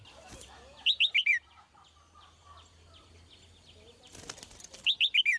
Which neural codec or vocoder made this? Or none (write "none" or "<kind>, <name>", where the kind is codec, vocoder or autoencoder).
none